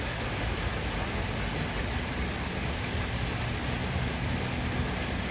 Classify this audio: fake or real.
real